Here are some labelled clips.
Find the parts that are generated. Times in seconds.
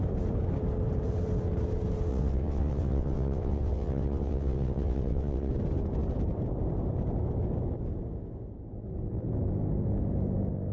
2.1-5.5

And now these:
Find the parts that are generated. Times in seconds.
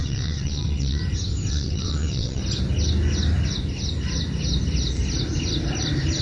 0.0-1.0; 1.5-2.4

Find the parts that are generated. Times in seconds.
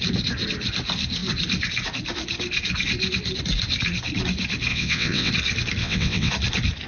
4.7-5.3; 5.8-6.3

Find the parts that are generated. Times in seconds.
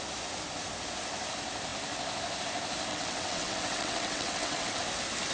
2.9-4.8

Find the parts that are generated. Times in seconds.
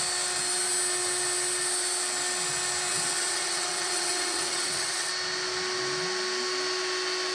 2.9-5.1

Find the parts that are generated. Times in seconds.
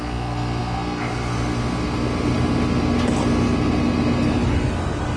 none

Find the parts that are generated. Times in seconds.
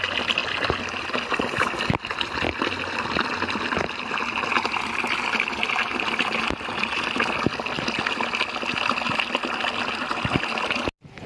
none